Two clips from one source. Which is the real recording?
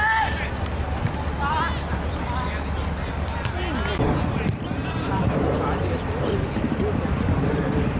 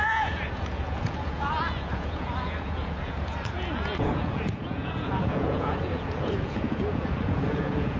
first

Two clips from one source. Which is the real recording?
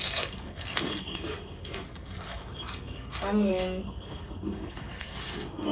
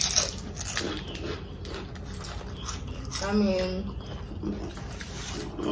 second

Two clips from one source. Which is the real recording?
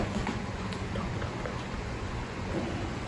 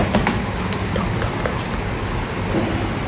second